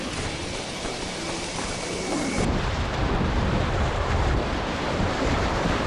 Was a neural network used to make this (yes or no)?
yes